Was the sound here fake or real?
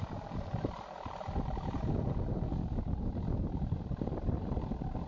real